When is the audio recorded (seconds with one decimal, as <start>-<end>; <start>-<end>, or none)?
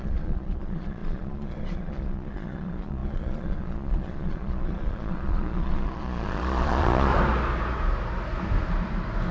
7.1-9.3